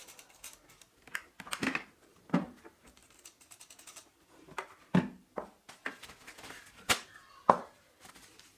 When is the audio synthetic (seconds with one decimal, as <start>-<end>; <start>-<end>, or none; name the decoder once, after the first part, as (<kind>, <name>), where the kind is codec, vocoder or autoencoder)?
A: 2.1-3.0 (vocoder, BigVGAN v2); 6.0-8.6